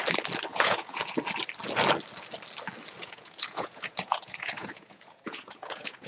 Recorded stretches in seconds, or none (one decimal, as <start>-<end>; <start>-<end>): 0.0-0.5; 1.0-3.0